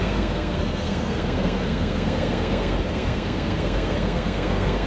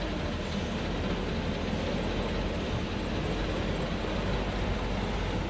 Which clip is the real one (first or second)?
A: second